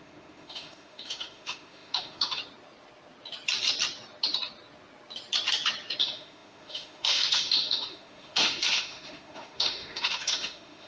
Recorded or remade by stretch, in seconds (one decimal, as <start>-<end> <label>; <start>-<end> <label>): 0.0-2.4 remade; 2.4-6.0 recorded; 6.0-10.9 remade